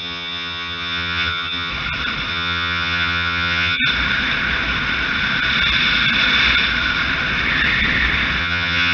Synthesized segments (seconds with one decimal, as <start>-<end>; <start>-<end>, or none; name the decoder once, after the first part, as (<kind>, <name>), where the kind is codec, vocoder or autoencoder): 0.0-1.7 (vocoder, HiFi-GAN); 2.3-3.8; 8.4-8.9